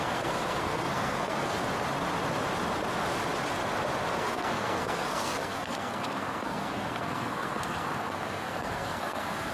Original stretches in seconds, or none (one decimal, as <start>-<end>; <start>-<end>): 1.6-4.1